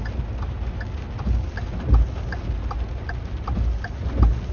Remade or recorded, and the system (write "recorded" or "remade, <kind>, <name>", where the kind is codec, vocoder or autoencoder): recorded